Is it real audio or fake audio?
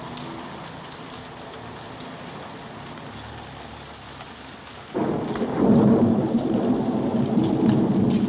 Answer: real